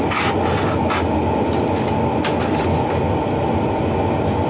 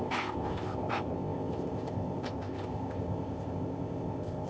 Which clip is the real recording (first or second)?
first